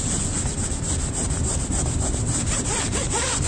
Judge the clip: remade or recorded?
recorded